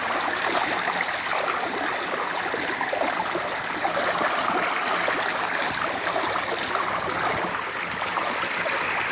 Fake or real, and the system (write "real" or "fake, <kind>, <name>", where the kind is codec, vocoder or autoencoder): real